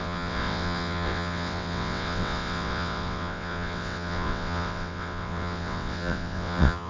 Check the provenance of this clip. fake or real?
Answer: fake